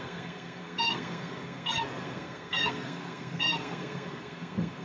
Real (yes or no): no